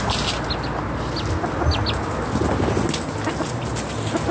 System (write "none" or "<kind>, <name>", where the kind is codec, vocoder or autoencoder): none